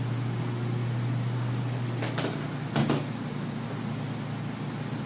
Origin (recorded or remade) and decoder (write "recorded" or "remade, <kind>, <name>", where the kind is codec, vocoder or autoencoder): remade, vocoder, BigVGAN v2